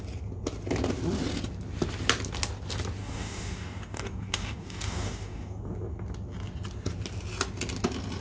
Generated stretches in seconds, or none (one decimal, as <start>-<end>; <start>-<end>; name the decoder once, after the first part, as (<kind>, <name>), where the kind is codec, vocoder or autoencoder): 3.0-5.6 (codec, DAC)